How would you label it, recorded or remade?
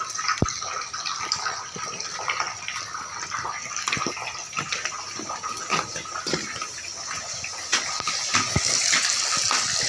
recorded